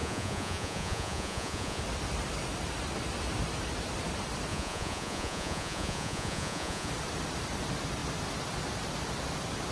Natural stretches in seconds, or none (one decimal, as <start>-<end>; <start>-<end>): 1.8-4.5; 6.9-9.7